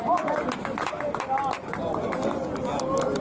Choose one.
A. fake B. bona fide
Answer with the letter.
B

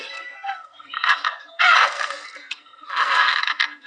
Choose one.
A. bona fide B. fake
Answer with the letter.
B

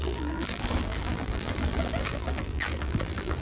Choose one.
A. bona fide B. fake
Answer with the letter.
B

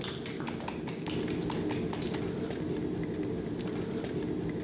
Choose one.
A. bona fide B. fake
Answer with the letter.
A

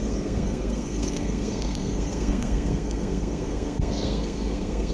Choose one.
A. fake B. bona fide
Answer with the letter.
A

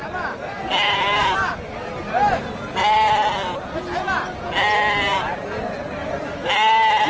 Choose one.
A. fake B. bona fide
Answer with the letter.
B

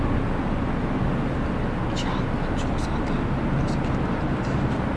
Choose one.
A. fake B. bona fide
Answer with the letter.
B